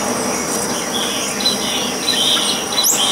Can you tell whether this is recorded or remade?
recorded